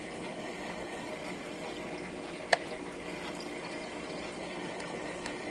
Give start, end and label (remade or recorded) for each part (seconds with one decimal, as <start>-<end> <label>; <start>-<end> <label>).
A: 0.0-1.1 remade; 1.1-4.4 recorded; 4.4-5.5 remade